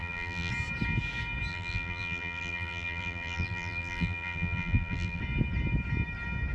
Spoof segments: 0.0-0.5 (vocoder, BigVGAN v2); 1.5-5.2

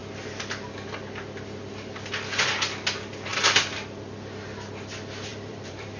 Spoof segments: 5.3-6.0 (vocoder, BigVGAN v2)

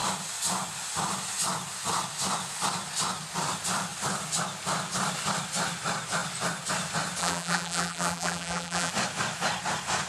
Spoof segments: 7.2-8.9 (vocoder, BigVGAN v2)

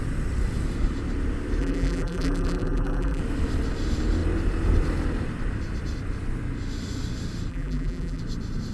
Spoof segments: 1.6-3.2 (vocoder, BigVGAN v2); 7.5-8.2